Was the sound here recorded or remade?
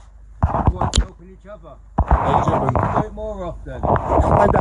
recorded